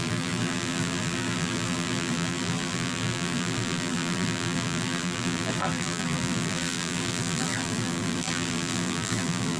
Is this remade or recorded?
remade